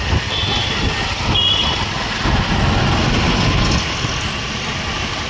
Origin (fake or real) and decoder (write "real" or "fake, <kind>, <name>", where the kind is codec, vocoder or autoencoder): real